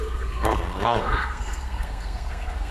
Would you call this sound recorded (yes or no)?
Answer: no